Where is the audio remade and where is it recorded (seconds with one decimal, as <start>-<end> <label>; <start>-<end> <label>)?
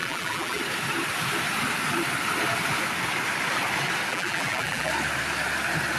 0.0-0.6 remade; 0.6-4.1 recorded; 4.1-4.9 remade; 4.9-6.0 recorded